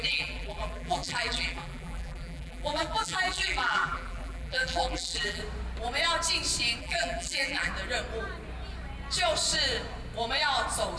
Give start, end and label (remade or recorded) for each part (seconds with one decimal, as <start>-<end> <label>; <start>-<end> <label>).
0.0-5.4 remade; 5.4-6.8 recorded; 6.8-7.7 remade; 7.7-11.0 recorded